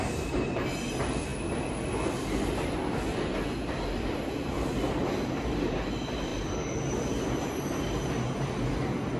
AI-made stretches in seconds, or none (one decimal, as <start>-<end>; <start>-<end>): none